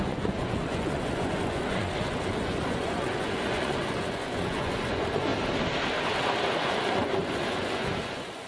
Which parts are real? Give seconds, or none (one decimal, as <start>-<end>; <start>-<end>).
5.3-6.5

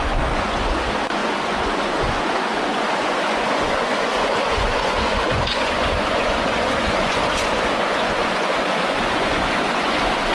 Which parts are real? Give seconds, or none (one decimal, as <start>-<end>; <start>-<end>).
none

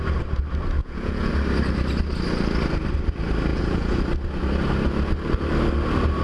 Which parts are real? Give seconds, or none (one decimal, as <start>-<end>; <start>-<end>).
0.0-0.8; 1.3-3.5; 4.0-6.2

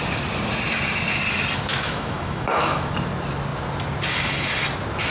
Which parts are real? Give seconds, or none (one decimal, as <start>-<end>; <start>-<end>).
0.0-1.7; 2.9-5.1

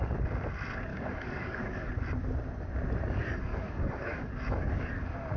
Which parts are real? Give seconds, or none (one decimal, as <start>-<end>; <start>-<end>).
0.0-0.9; 1.9-3.5; 4.9-5.4

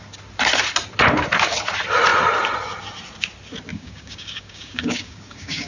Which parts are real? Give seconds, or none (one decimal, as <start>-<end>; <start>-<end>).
0.0-3.7

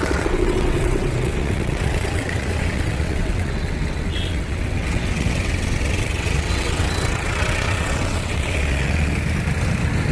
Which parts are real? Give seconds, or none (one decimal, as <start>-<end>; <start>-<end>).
9.1-10.1